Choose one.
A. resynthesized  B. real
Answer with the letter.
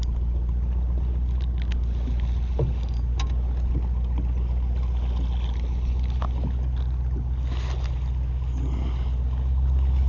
B